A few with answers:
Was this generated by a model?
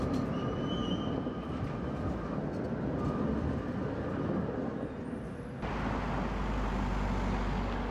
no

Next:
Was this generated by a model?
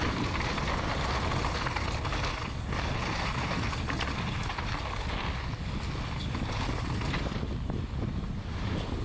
no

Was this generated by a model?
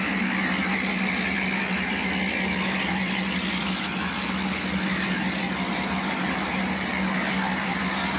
no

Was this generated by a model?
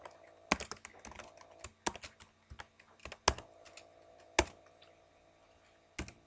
no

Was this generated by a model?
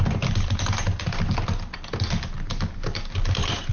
no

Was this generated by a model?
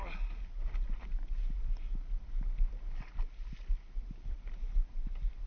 no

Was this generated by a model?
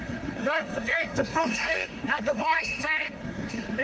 yes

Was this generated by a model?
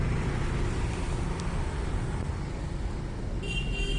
no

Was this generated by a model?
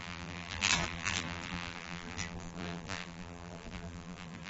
yes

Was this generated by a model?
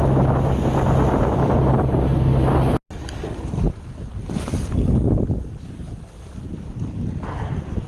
no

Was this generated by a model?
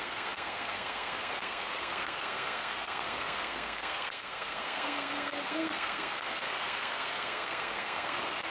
yes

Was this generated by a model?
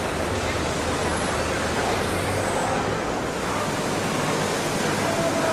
no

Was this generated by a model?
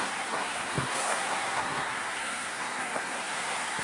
yes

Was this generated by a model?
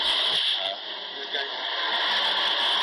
no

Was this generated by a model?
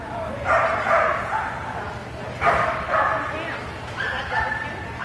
no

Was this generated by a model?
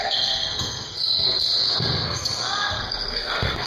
yes